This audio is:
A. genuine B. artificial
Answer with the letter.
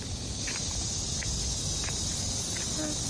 A